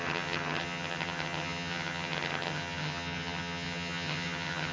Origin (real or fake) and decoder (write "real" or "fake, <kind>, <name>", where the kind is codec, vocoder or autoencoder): fake, vocoder, HiFi-GAN